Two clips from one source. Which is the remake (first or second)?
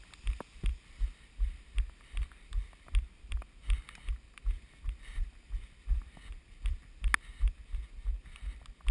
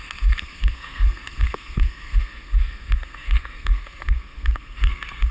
second